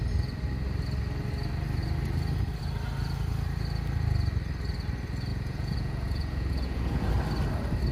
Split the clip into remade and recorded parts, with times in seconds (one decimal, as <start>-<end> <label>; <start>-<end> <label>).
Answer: 0.0-5.3 recorded; 5.3-7.0 remade; 7.0-7.9 recorded